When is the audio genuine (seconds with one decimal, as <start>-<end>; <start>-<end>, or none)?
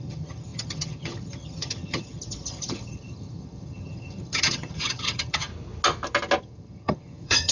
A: 5.5-6.4